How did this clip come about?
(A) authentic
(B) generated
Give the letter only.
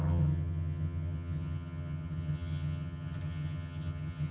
B